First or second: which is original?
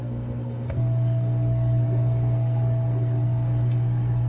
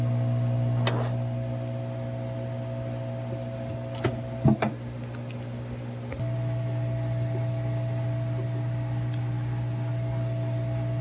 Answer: second